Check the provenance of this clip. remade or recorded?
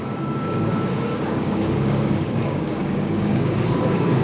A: remade